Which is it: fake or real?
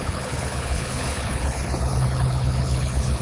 fake